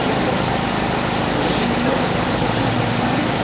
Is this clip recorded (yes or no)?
yes